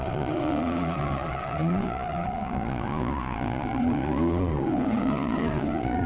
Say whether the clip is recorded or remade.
remade